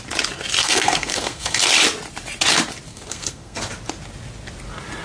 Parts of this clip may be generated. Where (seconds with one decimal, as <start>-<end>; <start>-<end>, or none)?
0.6-1.7; 2.9-3.7